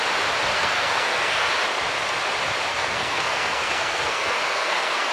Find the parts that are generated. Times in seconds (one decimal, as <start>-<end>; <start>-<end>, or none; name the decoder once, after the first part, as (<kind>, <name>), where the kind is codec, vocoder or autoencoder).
0.5-1.5 (codec, SNAC); 2.7-5.1